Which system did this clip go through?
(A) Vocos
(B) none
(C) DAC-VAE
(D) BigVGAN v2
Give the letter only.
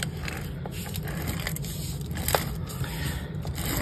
B